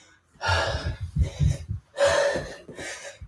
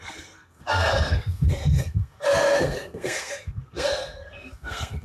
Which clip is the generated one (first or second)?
second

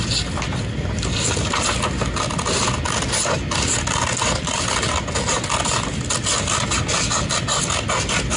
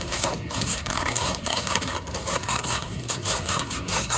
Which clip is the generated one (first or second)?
second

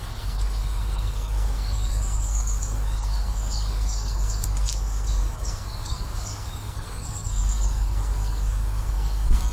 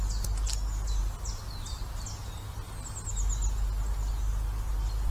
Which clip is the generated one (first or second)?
first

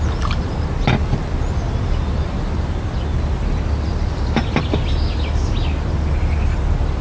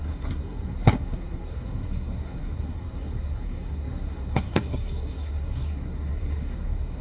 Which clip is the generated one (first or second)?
second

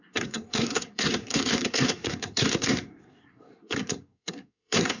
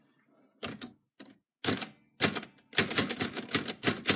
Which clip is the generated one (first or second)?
first